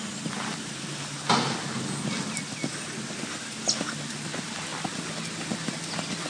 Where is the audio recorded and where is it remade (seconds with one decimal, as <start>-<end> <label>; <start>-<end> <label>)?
0.0-6.3 recorded